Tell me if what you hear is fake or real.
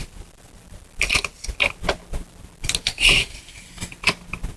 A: real